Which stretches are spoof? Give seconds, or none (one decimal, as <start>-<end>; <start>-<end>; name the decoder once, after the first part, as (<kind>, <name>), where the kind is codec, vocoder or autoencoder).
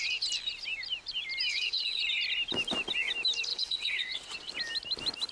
1.5-2.0 (vocoder, WaveNeXt); 3.5-4.5